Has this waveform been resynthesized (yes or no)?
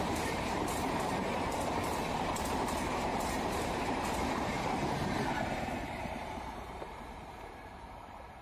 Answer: yes